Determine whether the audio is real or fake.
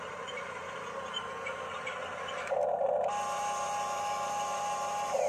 real